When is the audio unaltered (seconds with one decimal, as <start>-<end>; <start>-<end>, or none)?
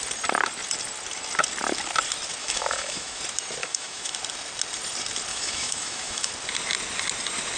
0.0-2.4; 3.2-3.6; 4.2-5.3; 6.3-7.6